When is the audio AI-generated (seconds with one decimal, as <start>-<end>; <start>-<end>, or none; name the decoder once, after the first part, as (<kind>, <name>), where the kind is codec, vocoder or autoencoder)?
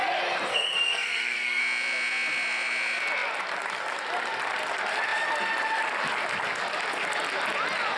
0.5-1.6 (codec, SNAC)